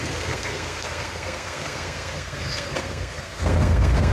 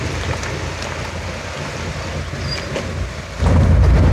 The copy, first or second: first